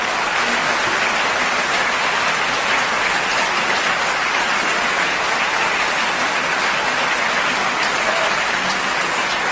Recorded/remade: recorded